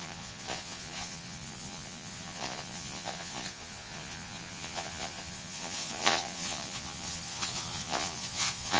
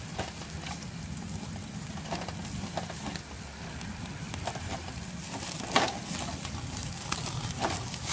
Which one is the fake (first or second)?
first